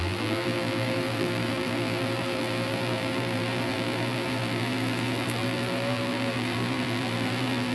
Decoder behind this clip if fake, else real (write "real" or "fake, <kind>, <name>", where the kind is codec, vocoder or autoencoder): fake, vocoder, BigVGAN v2